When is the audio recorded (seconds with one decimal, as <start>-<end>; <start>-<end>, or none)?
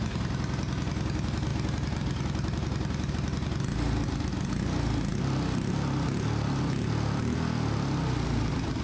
0.0-8.8